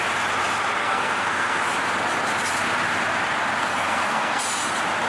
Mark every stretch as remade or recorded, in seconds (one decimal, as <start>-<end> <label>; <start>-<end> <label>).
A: 0.0-0.8 recorded; 0.8-1.6 remade; 1.6-3.6 recorded; 3.6-4.4 remade; 4.4-5.1 recorded

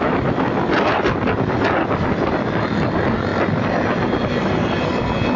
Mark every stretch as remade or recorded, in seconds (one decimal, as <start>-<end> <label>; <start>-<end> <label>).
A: 0.0-5.4 recorded

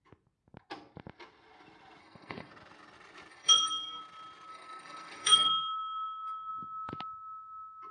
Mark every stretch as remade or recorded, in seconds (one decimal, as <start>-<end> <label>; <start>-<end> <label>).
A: 0.0-2.0 recorded; 2.0-2.5 remade; 2.5-3.3 recorded; 3.3-4.0 remade; 4.0-4.5 recorded; 4.5-6.5 remade; 6.5-7.9 recorded

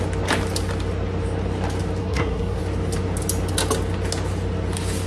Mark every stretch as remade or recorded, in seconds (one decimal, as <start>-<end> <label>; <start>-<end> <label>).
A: 0.0-2.0 recorded; 2.0-2.6 remade; 2.6-5.1 recorded

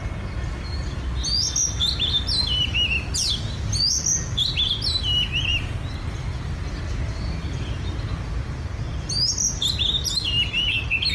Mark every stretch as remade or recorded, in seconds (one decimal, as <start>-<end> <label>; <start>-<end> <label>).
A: 0.0-11.1 recorded

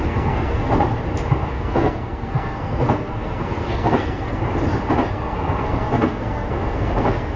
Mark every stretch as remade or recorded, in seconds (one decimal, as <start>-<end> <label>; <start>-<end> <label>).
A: 0.0-0.7 remade; 0.7-1.5 recorded; 1.5-4.4 remade; 4.4-5.1 recorded; 5.1-7.4 remade

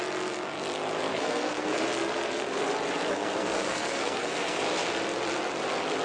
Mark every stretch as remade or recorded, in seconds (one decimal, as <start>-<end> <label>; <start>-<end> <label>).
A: 0.0-1.1 recorded; 1.1-1.8 remade; 1.8-3.1 recorded; 3.1-4.6 remade; 4.6-6.0 recorded

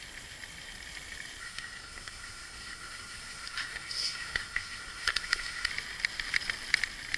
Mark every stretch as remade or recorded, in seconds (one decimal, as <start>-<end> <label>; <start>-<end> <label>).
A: 0.0-1.4 recorded; 1.4-5.7 remade; 5.7-7.2 recorded